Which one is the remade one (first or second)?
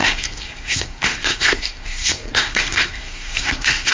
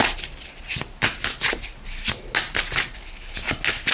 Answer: first